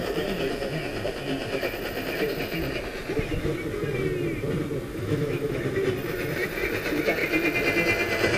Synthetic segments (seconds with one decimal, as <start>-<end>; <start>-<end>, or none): 4.9-5.6